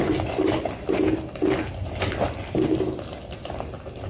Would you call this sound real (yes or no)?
yes